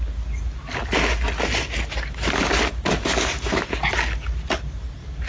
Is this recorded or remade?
recorded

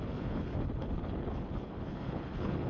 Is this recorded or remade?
remade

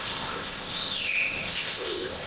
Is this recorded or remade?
remade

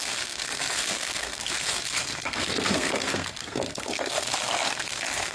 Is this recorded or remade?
remade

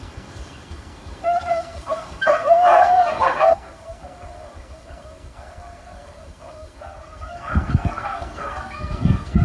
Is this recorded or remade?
remade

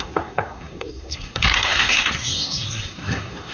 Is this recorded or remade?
remade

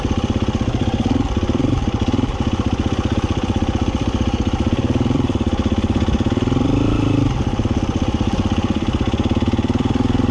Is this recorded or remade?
remade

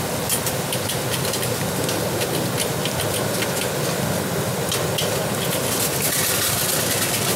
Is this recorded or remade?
recorded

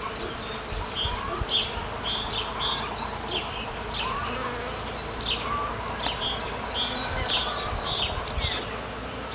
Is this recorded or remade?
recorded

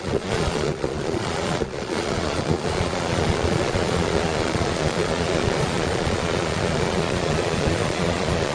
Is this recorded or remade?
remade